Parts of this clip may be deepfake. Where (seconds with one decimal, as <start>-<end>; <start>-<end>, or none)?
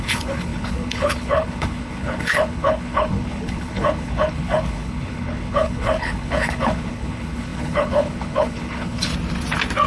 0.0-9.1